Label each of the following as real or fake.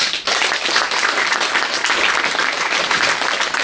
real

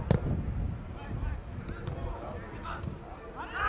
real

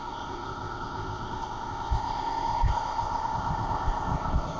fake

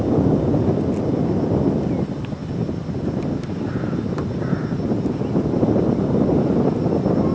real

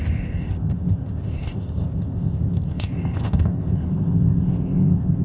fake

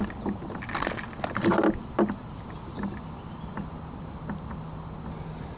real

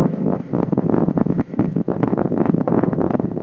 fake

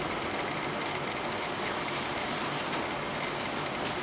real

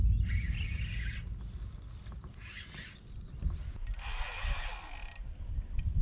real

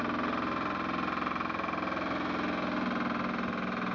real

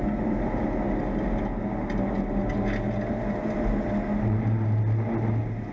real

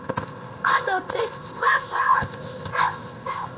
fake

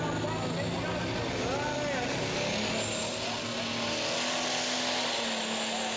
real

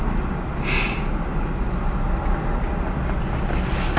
real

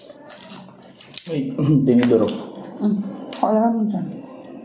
real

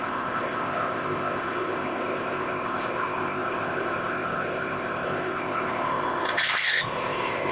fake